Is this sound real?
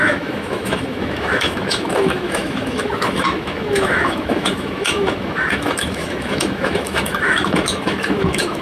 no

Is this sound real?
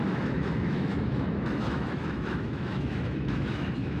no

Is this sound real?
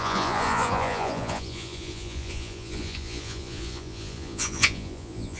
no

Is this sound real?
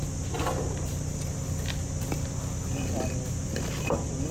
yes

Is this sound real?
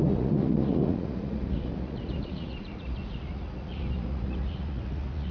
no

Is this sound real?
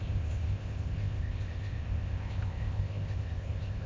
no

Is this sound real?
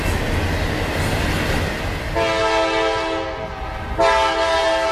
yes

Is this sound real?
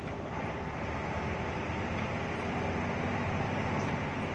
yes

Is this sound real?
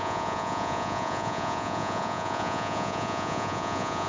no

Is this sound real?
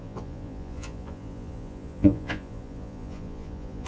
no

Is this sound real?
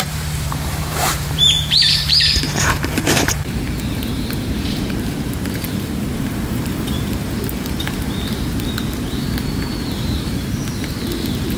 no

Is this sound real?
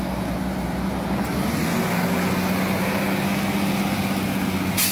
yes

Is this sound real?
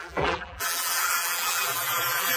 no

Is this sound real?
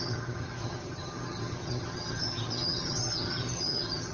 no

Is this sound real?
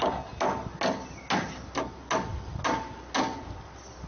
yes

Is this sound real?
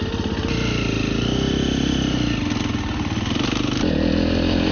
yes